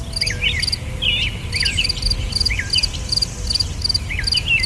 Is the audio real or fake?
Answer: real